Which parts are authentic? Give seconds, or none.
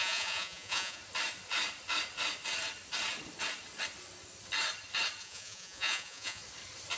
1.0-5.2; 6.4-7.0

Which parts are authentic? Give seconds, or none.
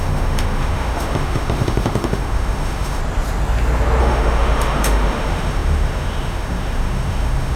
3.0-4.0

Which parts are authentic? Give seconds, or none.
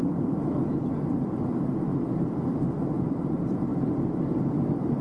0.0-5.0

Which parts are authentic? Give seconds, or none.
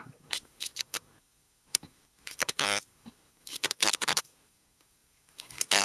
none